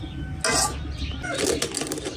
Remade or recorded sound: recorded